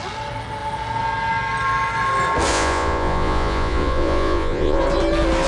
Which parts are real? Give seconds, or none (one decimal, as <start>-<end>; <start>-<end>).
0.0-2.5; 4.8-5.5